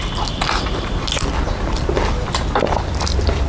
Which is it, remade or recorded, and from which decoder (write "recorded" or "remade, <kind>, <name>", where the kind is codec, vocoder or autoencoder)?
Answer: recorded